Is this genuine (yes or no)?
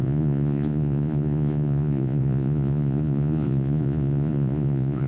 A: no